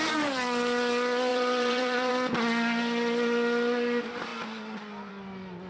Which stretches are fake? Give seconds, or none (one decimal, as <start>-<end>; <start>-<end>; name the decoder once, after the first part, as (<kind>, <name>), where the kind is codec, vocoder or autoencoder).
1.3-2.1 (vocoder, BigVGAN v2)